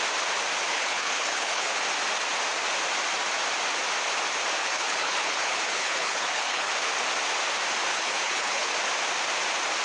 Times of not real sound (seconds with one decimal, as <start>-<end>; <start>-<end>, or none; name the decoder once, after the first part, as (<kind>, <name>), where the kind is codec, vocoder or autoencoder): 0.7-1.7 (codec, HILCodec); 4.6-6.7; 7.9-8.7